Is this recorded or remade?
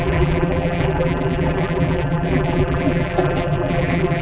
remade